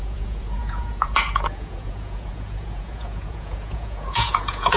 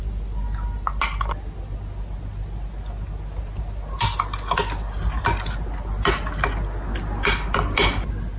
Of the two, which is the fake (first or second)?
first